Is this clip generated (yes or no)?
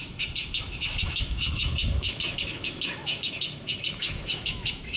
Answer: yes